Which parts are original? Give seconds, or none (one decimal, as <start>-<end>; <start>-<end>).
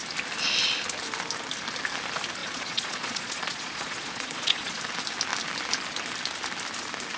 0.0-2.4; 4.8-7.2